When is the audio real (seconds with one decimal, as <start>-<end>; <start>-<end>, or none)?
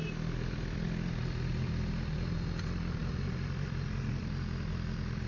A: 0.0-5.3